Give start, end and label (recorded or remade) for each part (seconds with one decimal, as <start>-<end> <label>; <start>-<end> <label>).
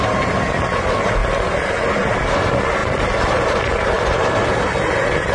0.0-2.8 recorded; 2.8-3.6 remade; 3.6-5.3 recorded